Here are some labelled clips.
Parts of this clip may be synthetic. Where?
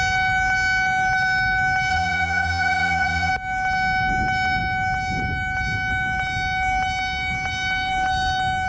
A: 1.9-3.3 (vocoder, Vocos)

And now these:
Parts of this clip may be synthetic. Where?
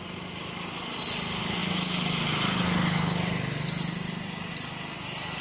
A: none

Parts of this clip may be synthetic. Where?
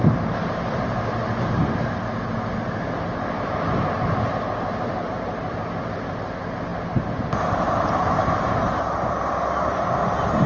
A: none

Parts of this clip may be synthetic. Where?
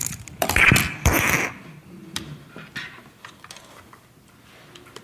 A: none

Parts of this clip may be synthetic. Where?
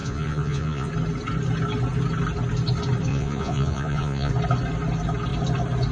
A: 0.0-0.9 (vocoder, Vocos); 3.1-4.3